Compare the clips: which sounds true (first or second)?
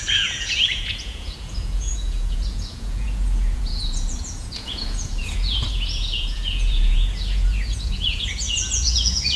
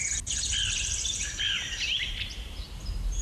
second